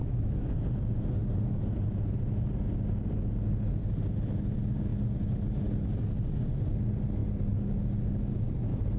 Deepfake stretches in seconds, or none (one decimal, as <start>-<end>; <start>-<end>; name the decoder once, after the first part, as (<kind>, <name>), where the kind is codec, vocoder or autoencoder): 0.0-0.6 (autoencoder, DAC-VAE)